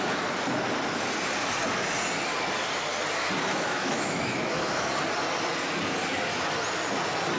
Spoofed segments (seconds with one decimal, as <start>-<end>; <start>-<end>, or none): 3.5-4.9